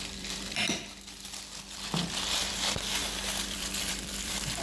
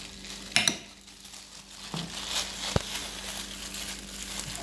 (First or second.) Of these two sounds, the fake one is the first